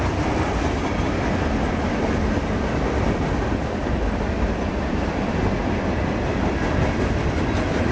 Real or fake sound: real